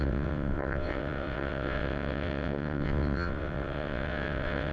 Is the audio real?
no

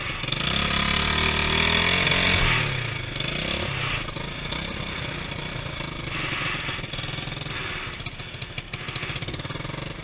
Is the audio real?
yes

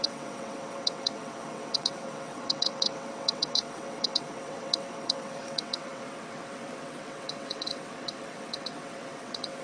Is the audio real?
no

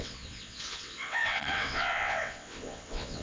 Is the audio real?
no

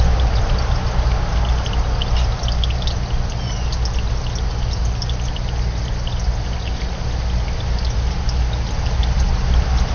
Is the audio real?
yes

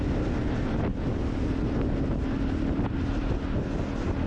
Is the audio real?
yes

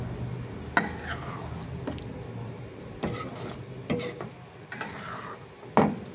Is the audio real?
yes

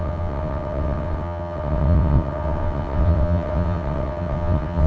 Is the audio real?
no